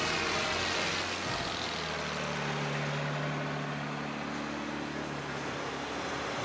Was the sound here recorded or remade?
recorded